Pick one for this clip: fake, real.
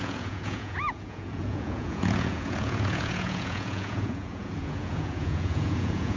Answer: fake